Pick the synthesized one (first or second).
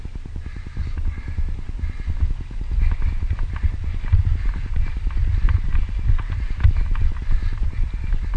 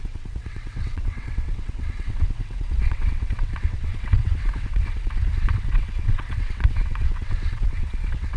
second